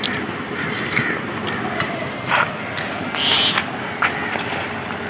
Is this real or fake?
real